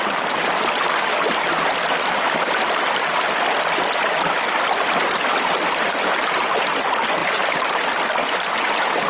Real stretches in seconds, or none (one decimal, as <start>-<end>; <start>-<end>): 0.0-9.1